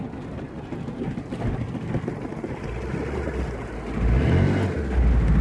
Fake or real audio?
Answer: real